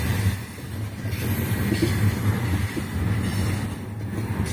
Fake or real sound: real